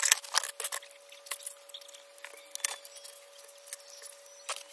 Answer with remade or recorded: recorded